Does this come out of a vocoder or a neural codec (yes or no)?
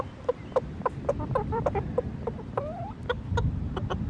yes